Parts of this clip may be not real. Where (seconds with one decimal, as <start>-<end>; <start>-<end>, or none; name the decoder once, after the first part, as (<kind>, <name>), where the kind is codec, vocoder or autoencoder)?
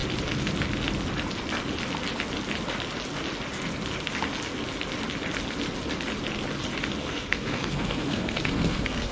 7.0-9.1 (codec, SNAC)